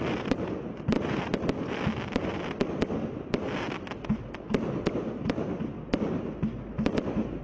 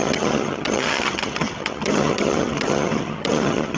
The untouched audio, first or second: first